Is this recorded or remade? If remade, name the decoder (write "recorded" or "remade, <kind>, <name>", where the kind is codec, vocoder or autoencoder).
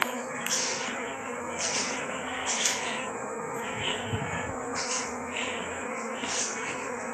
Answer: remade, codec, SNAC